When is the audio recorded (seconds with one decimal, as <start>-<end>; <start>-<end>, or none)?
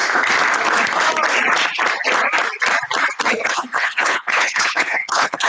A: 0.0-3.3